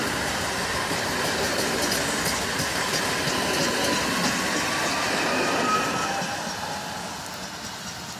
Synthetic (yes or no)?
no